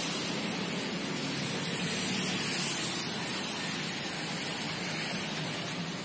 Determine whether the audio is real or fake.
real